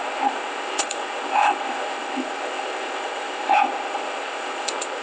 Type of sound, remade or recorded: remade